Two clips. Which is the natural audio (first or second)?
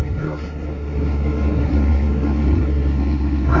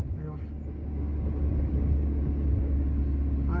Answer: second